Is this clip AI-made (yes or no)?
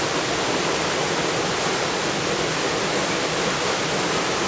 no